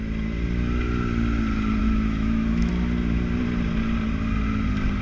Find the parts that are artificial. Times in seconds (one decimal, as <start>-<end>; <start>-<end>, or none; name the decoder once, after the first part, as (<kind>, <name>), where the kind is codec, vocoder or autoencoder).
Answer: 1.8-2.7 (autoencoder, DAC-VAE)